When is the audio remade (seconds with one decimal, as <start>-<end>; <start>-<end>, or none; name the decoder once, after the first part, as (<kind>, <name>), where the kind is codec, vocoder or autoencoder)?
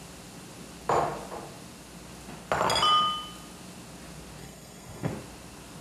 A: 4.4-5.1 (codec, SNAC)